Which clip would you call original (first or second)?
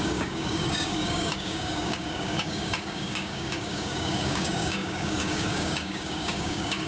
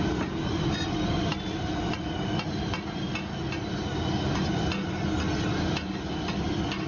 second